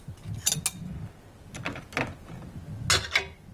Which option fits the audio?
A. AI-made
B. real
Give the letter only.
B